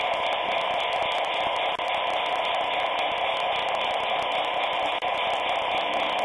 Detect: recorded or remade remade